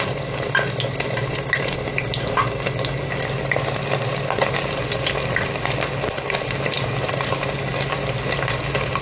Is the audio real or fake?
real